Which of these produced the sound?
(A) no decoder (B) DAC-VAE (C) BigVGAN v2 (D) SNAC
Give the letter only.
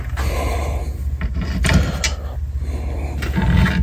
A